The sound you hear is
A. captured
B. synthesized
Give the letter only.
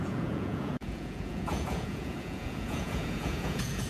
B